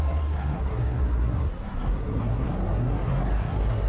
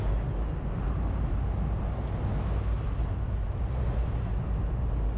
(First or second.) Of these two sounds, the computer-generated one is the first